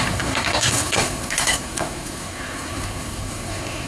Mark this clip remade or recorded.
remade